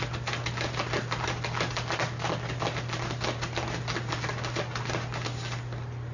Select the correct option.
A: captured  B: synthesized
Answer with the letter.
A